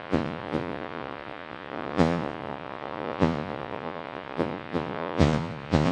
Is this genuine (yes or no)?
no